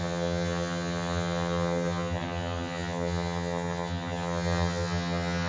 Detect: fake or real fake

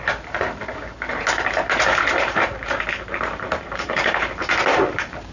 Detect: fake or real fake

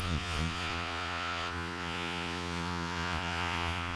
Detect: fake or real fake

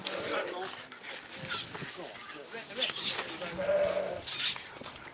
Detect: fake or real real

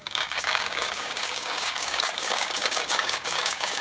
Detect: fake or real fake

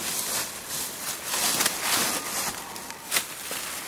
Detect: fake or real real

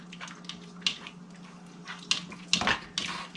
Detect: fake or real real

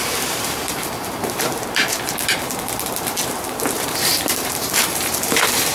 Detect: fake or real fake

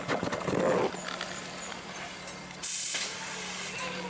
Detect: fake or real real